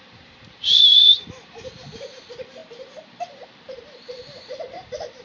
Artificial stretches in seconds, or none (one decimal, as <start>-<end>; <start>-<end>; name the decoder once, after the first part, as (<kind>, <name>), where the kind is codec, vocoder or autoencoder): 0.0-5.2 (vocoder, BigVGAN v2)